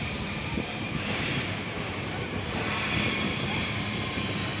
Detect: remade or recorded remade